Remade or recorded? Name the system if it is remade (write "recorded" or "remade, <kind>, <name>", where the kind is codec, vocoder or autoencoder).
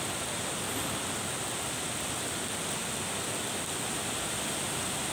recorded